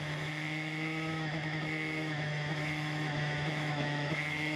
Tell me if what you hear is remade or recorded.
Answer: remade